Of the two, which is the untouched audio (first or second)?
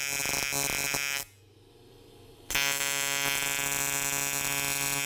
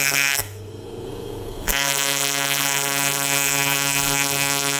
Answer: first